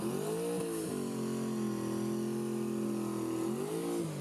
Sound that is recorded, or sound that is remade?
recorded